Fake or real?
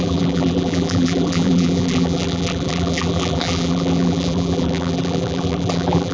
fake